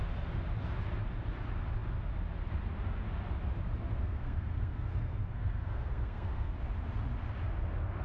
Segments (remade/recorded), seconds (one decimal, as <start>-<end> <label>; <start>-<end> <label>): 0.0-4.0 recorded; 4.0-6.5 remade; 6.5-8.0 recorded